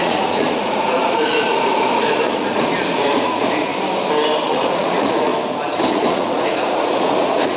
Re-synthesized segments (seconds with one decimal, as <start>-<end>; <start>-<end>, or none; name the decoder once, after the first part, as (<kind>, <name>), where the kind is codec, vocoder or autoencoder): 0.0-3.7 (vocoder, Vocos); 4.5-5.3; 5.9-7.6

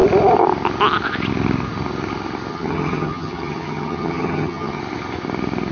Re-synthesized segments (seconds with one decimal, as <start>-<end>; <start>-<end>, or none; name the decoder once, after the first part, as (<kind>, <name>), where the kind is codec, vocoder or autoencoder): 2.5-4.8 (vocoder, HiFi-GAN)

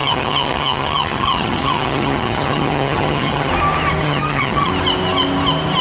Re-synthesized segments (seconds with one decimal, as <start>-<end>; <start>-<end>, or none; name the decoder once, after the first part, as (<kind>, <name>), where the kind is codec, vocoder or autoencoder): 0.0-3.5 (vocoder, HiFi-GAN); 4.0-4.7

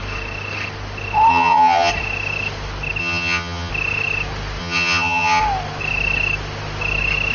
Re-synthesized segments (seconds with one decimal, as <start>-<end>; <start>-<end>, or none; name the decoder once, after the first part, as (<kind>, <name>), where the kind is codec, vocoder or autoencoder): 1.3-1.9 (vocoder, HiFi-GAN); 3.0-3.7; 4.6-5.4

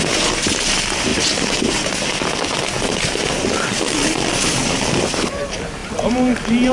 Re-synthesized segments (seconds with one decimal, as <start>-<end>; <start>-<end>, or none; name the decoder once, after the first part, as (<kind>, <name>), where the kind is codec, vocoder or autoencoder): none